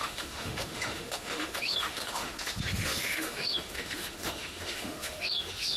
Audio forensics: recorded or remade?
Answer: remade